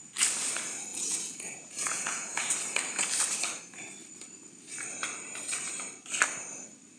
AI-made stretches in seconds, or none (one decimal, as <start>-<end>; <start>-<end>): 0.9-2.5